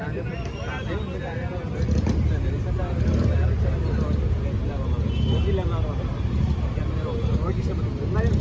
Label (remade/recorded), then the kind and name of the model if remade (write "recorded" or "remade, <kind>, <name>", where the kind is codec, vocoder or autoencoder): recorded